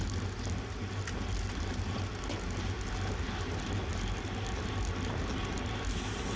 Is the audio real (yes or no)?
yes